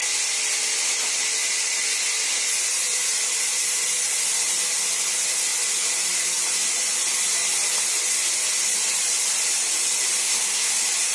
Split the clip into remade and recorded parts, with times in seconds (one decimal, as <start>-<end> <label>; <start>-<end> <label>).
0.0-10.2 recorded; 10.2-10.7 remade; 10.7-11.1 recorded